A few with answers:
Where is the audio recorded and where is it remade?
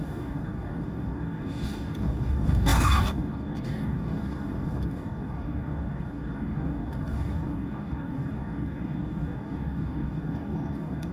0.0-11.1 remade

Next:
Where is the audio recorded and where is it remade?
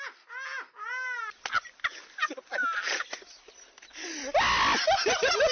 0.0-5.5 recorded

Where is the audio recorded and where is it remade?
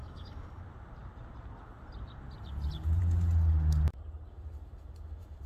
0.0-0.6 remade; 0.6-5.5 recorded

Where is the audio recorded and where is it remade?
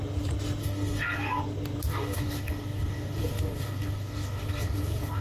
0.0-0.6 recorded; 0.6-1.4 remade; 1.4-1.9 recorded; 1.9-5.2 remade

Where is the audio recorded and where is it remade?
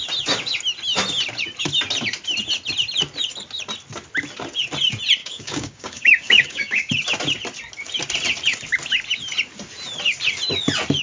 0.0-5.2 recorded; 5.2-6.9 remade; 6.9-11.0 recorded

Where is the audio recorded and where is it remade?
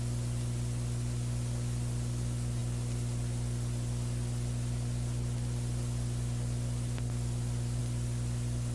0.0-8.7 recorded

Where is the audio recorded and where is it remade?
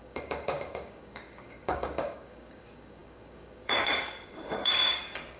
0.0-5.4 remade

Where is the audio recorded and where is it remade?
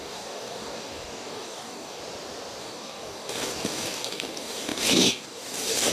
0.0-2.0 remade; 2.0-2.6 recorded; 2.6-5.9 remade